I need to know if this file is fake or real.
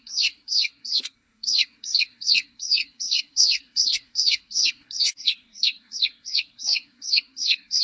fake